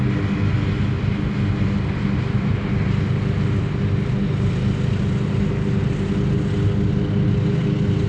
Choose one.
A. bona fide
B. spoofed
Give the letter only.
A